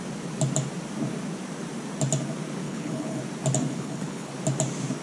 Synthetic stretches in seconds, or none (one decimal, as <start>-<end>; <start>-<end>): 2.6-3.2; 3.7-4.3